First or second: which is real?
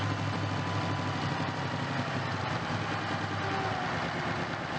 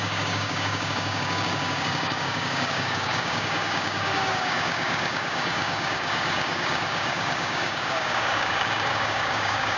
first